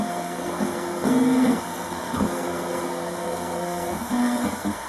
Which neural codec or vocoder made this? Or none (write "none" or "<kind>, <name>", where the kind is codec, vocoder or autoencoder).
codec, SNAC